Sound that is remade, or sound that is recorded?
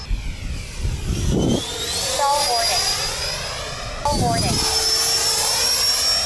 recorded